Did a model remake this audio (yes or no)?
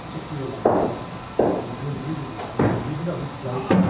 no